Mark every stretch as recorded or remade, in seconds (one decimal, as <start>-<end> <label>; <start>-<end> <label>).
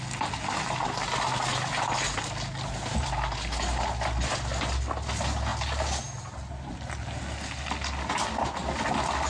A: 0.0-9.3 recorded